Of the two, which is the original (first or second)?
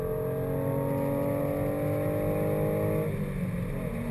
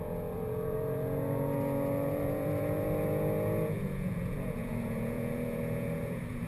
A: first